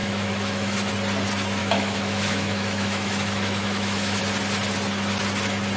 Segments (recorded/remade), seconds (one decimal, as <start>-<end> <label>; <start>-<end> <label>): 0.0-0.9 remade; 0.9-1.6 recorded; 1.6-4.2 remade; 4.2-5.8 recorded